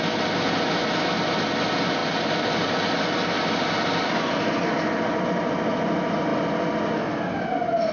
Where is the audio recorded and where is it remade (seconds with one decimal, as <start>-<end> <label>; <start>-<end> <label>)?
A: 0.0-7.9 recorded